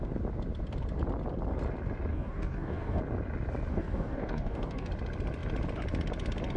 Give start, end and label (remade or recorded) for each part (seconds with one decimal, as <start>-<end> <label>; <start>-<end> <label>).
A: 0.0-2.1 recorded; 2.1-3.0 remade; 3.0-3.7 recorded; 3.7-4.9 remade; 4.9-6.6 recorded